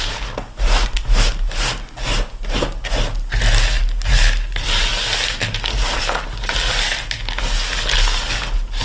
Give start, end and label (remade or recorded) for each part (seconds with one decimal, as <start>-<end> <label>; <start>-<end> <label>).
0.0-8.8 recorded